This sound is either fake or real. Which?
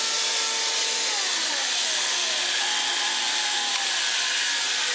real